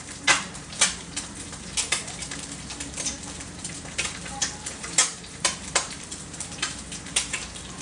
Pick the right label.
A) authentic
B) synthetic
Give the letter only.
B